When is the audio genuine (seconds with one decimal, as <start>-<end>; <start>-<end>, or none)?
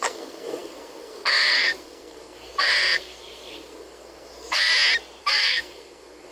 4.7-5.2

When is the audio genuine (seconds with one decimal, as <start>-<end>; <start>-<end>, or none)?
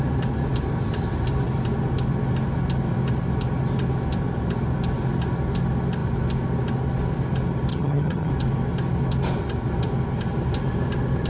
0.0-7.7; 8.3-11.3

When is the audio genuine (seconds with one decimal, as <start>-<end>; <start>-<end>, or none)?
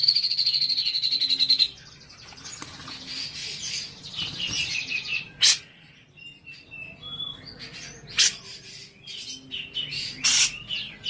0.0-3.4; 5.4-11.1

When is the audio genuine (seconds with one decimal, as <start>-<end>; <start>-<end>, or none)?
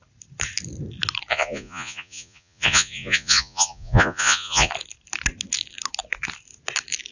0.0-1.3; 4.7-7.1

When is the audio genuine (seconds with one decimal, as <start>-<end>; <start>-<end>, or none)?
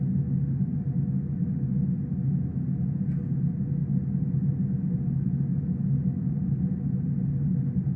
0.0-0.7; 1.7-5.5; 6.3-8.0